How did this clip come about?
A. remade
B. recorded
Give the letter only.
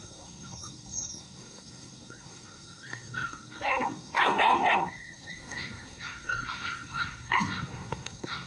A